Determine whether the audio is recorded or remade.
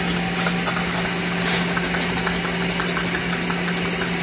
recorded